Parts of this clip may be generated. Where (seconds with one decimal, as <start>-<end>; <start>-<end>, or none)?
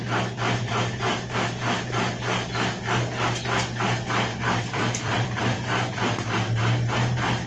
4.3-5.9